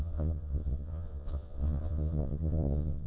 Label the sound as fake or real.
fake